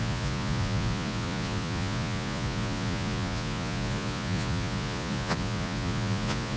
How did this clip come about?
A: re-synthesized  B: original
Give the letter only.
A